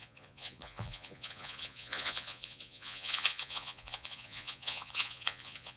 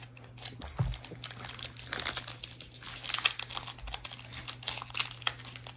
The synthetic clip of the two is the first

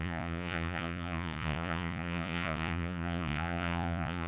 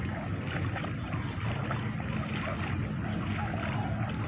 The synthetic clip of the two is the first